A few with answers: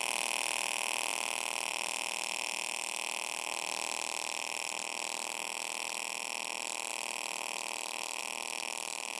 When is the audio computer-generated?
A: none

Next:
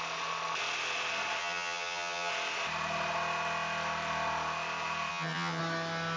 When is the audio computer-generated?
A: 1.4-2.3; 5.1-5.6

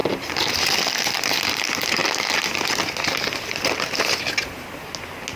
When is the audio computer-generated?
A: 0.0-1.4

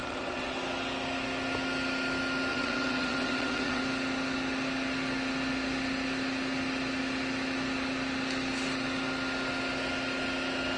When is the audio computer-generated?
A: 0.0-0.6; 2.5-3.8

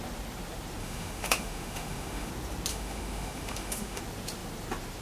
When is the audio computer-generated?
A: 0.8-2.3; 2.7-4.0

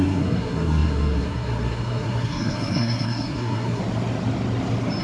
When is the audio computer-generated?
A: 0.0-3.8

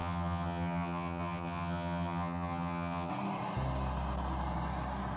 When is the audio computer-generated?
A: 0.0-3.1

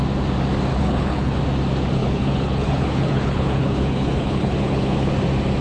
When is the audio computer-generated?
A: 0.7-1.4; 2.0-5.1